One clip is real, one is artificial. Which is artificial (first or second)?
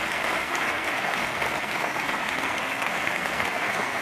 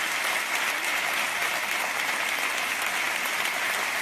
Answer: first